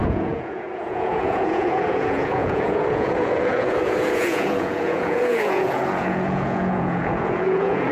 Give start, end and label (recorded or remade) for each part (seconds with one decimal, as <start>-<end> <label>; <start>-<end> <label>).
0.0-7.9 remade